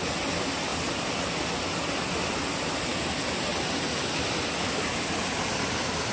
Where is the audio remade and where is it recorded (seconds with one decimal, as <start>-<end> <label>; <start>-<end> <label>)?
0.0-0.7 recorded; 0.7-1.5 remade; 1.5-6.1 recorded